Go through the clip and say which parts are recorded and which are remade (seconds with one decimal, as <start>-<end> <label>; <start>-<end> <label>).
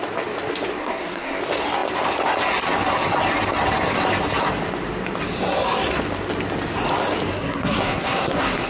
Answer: 0.0-0.8 recorded; 0.8-1.4 remade; 1.4-7.3 recorded; 7.3-8.7 remade